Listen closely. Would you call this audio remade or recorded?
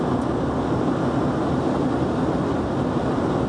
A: recorded